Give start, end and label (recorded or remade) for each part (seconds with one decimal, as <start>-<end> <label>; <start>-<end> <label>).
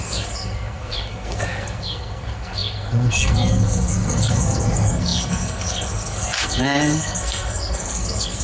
0.0-8.4 remade